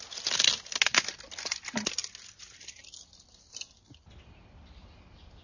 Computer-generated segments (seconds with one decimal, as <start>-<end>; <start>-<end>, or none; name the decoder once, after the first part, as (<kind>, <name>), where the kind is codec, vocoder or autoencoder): none